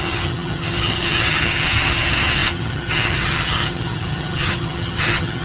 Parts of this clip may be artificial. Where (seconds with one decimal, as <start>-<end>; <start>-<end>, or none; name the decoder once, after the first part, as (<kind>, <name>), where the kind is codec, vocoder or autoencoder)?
0.0-5.4 (vocoder, HiFi-GAN)